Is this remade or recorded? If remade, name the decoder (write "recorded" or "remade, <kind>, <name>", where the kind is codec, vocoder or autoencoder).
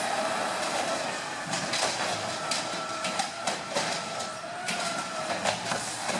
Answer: remade, vocoder, BigVGAN v2